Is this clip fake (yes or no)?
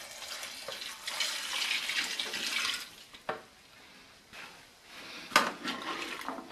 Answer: no